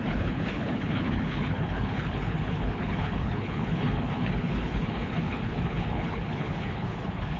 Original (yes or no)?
no